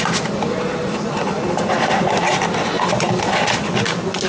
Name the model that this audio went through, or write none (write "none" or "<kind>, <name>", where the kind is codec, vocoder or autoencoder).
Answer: none